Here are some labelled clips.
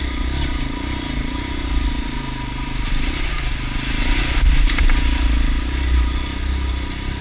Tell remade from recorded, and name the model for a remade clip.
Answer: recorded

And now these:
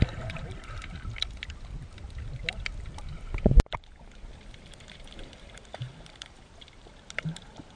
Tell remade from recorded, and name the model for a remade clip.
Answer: recorded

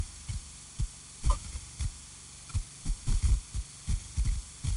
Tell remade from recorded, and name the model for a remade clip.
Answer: recorded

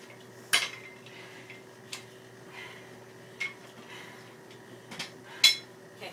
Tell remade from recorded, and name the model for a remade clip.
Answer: recorded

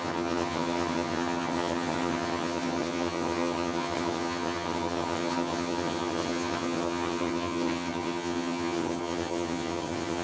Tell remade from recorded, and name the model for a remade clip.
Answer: remade, vocoder, HiFi-GAN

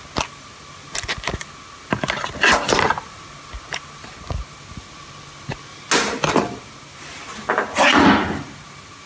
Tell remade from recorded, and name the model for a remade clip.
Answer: recorded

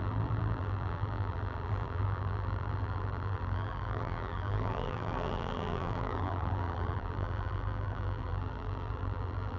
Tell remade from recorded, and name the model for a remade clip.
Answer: remade, vocoder, BigVGAN v2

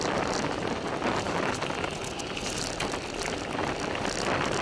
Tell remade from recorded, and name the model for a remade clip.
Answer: recorded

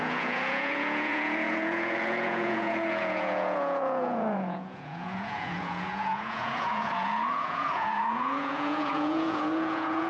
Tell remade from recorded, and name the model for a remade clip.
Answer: remade, vocoder, Vocos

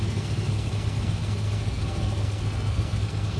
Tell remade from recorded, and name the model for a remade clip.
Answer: remade, codec, SNAC